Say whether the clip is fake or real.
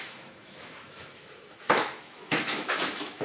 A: fake